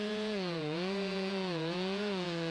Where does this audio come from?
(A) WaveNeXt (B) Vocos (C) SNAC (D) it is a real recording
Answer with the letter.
B